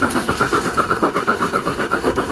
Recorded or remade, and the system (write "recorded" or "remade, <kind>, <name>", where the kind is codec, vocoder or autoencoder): remade, codec, SNAC